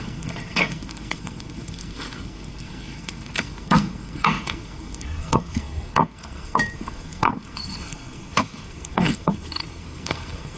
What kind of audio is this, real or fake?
fake